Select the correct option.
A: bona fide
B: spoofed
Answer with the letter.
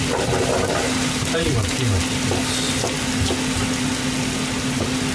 A